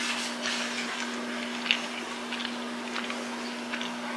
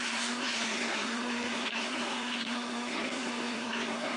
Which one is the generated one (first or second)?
second